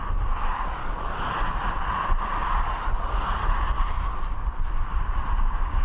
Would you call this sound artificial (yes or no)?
no